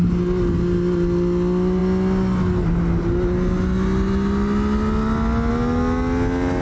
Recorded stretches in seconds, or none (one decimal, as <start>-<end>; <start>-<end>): 0.0-6.6